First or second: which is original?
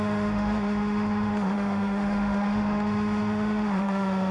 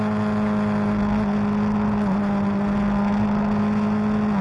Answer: second